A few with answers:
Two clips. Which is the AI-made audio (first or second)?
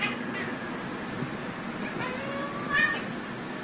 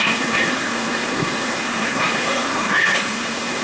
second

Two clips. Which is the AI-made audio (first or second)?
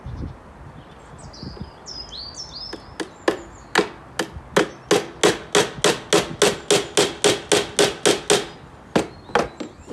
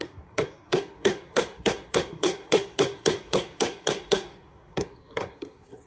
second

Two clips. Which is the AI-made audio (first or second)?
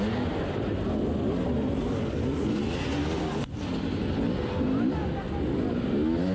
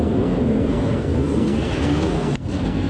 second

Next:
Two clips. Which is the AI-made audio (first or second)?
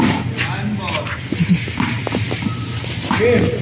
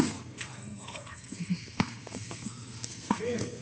second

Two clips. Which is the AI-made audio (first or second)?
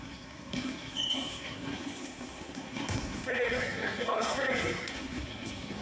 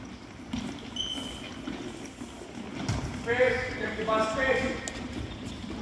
first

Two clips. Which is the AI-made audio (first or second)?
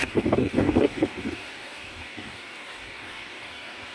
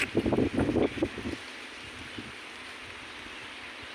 first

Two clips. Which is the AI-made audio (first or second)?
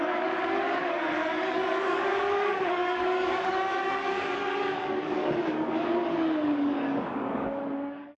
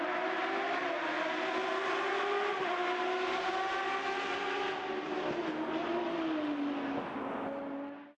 first